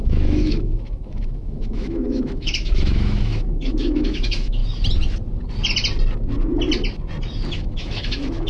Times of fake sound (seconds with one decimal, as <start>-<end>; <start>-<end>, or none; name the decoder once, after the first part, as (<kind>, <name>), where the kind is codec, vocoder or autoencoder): 0.0-4.6 (autoencoder, DAC-VAE); 7.5-8.5